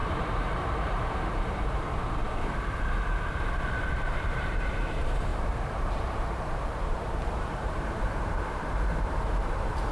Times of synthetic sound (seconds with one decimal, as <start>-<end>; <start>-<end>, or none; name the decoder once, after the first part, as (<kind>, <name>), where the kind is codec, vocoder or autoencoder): 0.0-9.9 (vocoder, BigVGAN v2)